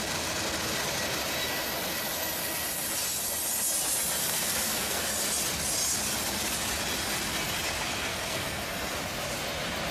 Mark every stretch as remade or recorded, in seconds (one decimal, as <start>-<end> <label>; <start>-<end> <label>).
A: 0.0-4.2 recorded; 4.2-5.1 remade; 5.1-8.1 recorded; 8.1-9.0 remade; 9.0-9.9 recorded